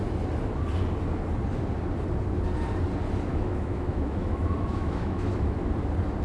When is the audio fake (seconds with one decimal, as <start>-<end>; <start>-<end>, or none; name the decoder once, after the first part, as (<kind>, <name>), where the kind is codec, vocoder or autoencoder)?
3.3-5.6 (autoencoder, DAC-VAE)